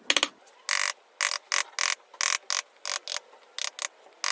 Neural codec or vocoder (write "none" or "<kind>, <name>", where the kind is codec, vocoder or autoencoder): none